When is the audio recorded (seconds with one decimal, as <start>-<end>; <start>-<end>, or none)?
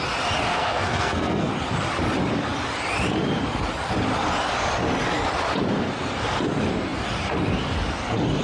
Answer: 0.0-0.5; 1.5-8.4